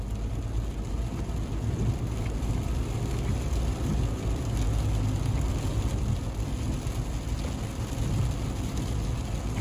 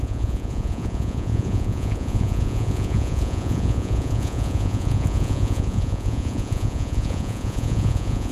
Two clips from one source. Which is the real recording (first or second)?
first